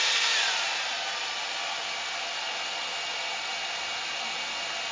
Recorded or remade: recorded